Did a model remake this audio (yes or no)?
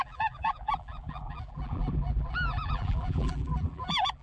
yes